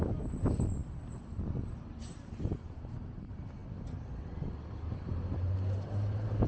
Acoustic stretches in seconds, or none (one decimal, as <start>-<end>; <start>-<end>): 0.0-6.5